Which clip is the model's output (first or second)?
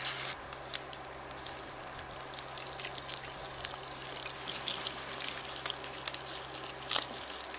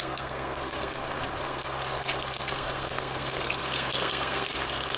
second